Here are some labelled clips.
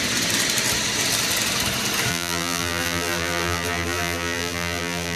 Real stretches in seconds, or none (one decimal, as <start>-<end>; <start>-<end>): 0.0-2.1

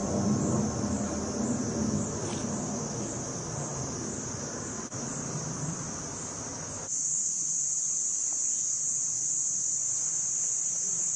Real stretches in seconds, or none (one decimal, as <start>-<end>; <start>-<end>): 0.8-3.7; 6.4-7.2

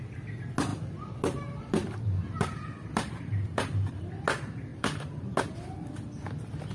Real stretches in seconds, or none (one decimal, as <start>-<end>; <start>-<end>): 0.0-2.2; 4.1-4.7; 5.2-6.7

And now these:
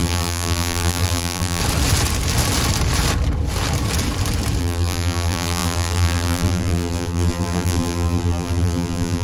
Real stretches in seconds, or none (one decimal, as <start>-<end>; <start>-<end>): 1.6-4.6

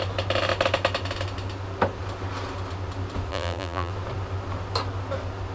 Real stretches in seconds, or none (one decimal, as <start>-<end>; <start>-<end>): 0.0-3.3; 3.9-5.5

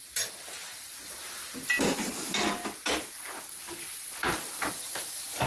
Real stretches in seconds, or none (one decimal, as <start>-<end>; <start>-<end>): 1.4-4.7

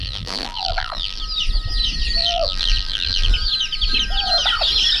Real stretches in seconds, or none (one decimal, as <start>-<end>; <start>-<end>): 1.2-2.2; 3.3-5.0